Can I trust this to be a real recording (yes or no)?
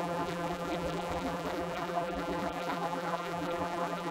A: no